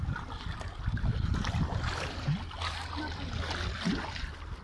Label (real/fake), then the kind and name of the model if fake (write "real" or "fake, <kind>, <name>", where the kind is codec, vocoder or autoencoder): real